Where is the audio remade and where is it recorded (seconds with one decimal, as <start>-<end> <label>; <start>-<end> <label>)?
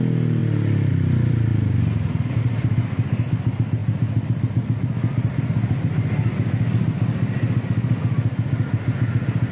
0.0-9.5 recorded